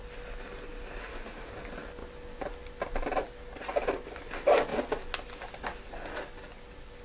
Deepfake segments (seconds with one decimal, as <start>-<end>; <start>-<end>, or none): 1.0-1.5